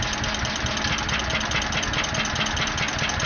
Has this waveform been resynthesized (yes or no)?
no